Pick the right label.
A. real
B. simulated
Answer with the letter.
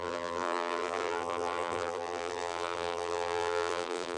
B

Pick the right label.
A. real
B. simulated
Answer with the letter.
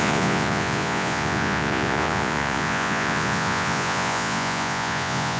B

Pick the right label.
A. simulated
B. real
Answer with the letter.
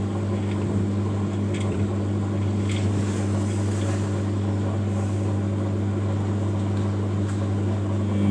A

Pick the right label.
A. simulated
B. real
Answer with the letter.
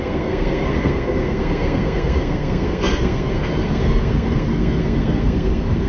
A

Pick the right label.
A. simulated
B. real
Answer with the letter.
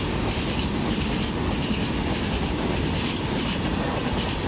A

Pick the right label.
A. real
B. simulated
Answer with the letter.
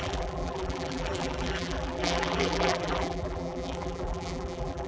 B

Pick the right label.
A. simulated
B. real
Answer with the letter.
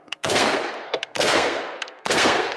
A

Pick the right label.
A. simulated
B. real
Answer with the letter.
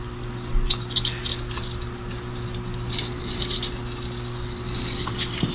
B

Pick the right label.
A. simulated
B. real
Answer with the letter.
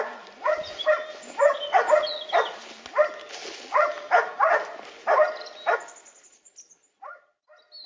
B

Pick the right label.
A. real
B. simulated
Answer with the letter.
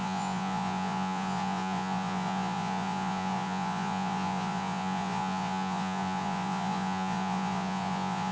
B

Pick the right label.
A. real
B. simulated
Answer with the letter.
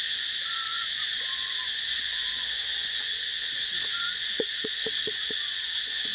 B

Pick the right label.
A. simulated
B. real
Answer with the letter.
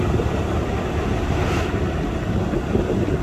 B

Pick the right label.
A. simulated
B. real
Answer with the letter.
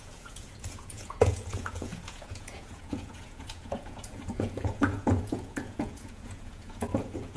A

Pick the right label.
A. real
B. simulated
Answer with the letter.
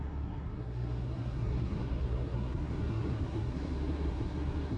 B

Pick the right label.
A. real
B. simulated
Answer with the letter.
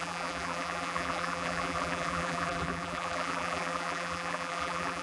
B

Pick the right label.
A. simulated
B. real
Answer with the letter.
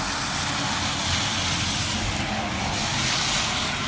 B